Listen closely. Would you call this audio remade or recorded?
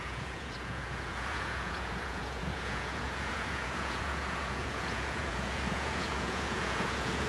remade